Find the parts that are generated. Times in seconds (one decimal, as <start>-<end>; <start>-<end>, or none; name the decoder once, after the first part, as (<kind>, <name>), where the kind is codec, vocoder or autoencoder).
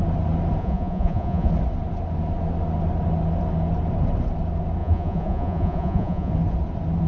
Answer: 0.6-1.5 (vocoder, Vocos); 4.8-6.3